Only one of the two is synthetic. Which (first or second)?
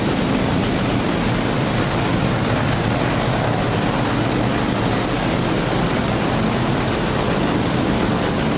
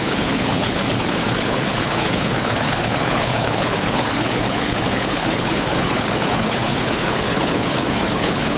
second